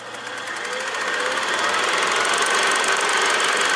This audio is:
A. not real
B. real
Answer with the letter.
B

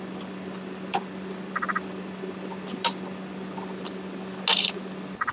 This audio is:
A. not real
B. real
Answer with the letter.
B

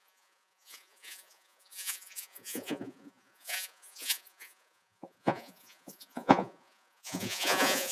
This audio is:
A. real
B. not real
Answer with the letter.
B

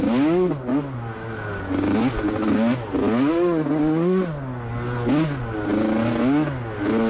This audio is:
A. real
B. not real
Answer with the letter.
A